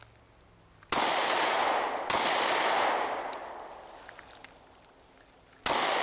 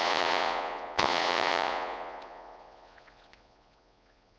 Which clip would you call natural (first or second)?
first